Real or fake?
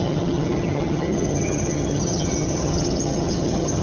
fake